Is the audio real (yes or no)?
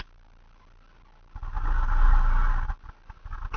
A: yes